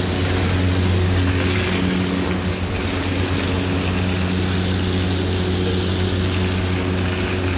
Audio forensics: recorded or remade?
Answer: recorded